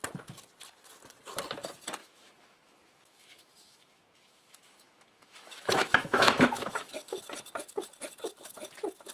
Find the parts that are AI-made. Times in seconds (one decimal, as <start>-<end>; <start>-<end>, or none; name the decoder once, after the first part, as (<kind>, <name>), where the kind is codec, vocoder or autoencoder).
2.0-7.2 (autoencoder, DAC-VAE)